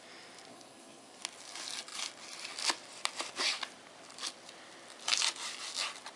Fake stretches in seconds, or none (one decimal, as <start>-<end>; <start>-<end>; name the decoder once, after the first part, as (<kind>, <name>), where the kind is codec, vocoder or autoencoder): 0.5-1.2 (codec, SNAC)